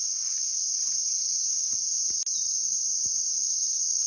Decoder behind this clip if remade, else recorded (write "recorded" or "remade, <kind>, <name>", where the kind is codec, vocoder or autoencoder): recorded